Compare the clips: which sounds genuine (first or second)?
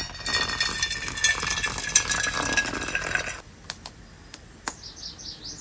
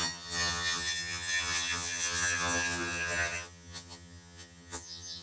first